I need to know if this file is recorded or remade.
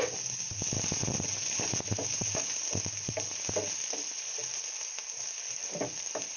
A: recorded